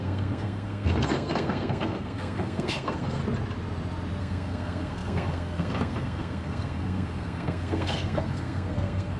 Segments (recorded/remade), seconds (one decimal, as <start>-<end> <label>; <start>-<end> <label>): 0.0-3.2 remade; 3.2-4.2 recorded; 4.2-9.2 remade